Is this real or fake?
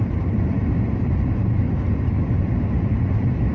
real